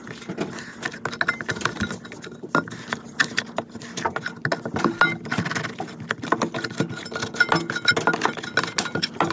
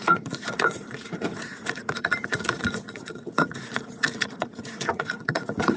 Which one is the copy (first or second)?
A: second